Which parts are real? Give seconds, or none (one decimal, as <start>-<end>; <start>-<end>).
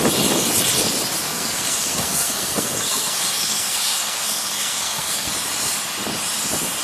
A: 0.0-1.2; 5.3-6.8